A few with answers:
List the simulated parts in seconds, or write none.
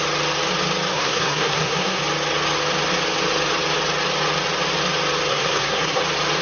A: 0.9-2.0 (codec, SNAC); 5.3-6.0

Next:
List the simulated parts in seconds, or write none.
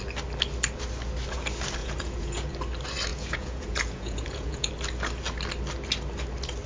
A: 1.8-2.5 (vocoder, Vocos); 3.1-4.7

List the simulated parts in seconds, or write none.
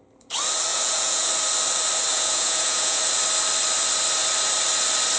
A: 0.7-1.3 (vocoder, Vocos); 2.1-3.0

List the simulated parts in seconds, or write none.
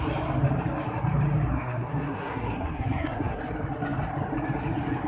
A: 1.5-3.4 (codec, SNAC)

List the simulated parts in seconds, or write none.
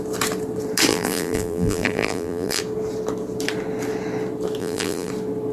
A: 0.9-2.6 (vocoder, BigVGAN v2); 4.6-5.1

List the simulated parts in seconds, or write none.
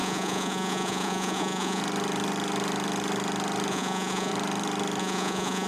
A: 0.0-1.8 (vocoder, Vocos); 3.7-4.3; 5.0-5.7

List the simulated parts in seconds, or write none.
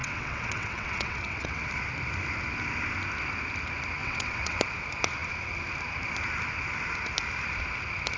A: 0.0-1.7 (vocoder, WaveNeXt); 4.0-4.6